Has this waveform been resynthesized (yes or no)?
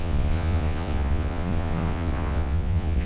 yes